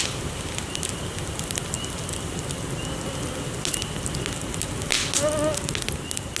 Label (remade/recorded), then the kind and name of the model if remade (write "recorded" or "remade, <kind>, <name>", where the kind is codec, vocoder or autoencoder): recorded